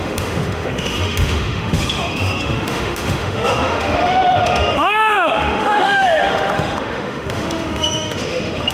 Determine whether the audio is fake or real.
fake